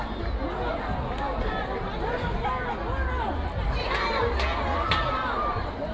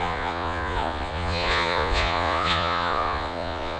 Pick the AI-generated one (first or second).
second